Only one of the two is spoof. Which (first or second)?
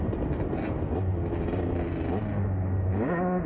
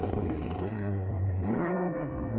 second